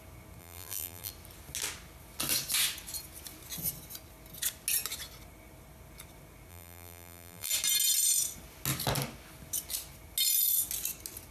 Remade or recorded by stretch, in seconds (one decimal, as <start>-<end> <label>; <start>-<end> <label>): 0.0-0.4 recorded; 0.4-1.1 remade; 1.1-6.5 recorded; 6.5-7.5 remade; 7.5-11.3 recorded